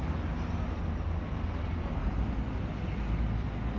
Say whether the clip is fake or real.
real